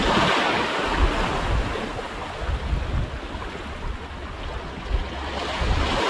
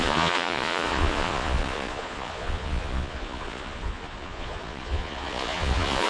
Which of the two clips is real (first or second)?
first